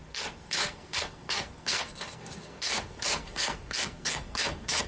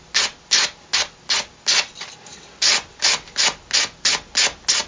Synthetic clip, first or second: first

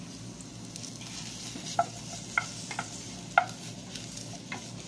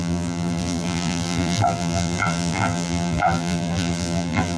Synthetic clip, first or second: second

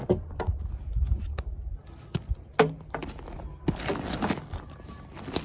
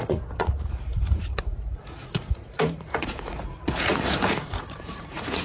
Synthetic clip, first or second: second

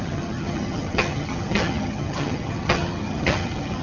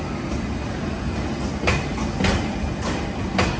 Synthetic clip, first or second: first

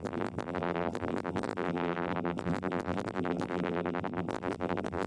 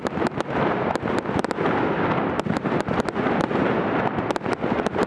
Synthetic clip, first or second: first